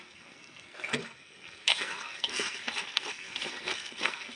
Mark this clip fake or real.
fake